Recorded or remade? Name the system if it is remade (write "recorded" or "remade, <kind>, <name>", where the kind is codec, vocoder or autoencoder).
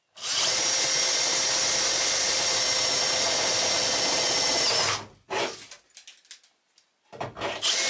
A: recorded